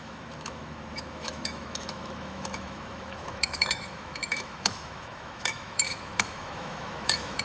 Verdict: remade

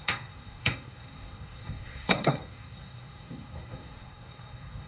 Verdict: remade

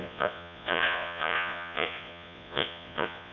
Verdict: remade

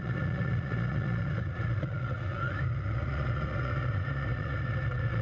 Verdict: remade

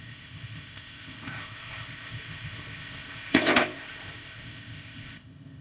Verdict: remade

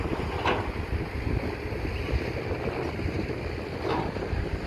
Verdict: recorded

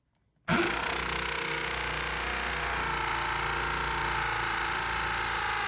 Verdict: recorded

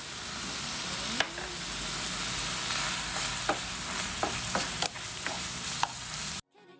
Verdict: recorded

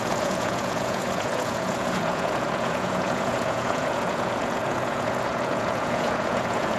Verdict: remade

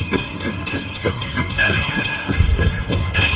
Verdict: remade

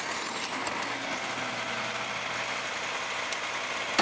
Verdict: recorded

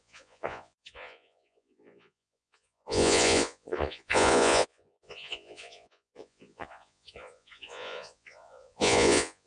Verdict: remade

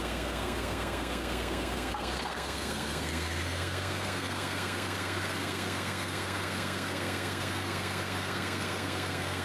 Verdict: remade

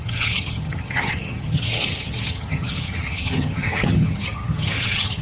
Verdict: remade